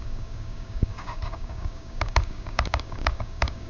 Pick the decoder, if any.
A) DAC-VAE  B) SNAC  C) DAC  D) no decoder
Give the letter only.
C